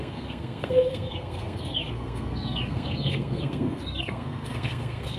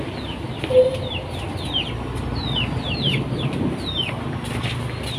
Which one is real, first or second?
second